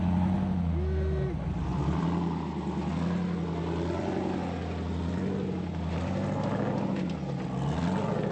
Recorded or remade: recorded